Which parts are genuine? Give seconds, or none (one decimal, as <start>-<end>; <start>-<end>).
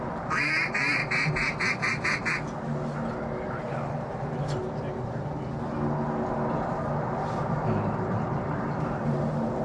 1.0-3.5; 4.6-7.2